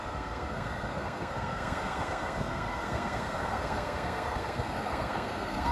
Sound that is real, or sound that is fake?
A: fake